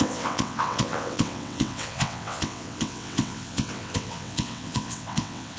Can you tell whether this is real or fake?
fake